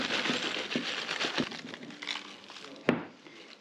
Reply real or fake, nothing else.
real